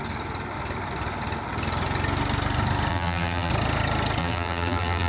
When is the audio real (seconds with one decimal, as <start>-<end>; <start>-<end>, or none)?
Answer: 0.0-2.9; 3.5-4.2